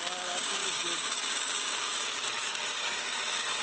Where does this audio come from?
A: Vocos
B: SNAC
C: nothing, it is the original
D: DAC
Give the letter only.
D